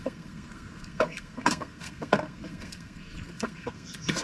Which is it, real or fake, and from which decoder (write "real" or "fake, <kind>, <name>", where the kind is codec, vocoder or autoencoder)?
fake, codec, SNAC